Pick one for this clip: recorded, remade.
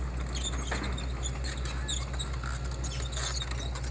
recorded